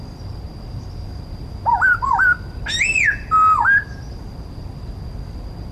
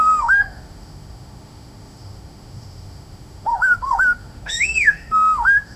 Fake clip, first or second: second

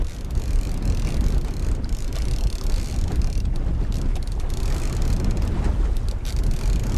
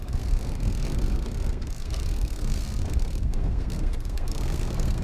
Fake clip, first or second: second